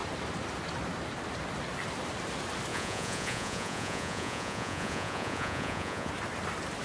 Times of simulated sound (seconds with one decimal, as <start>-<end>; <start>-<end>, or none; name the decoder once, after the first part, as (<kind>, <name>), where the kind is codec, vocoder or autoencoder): 2.7-6.1 (vocoder, Vocos)